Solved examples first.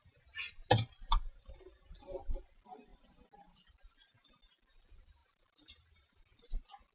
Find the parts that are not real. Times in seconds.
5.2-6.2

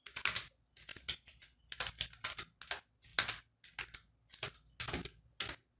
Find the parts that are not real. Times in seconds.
none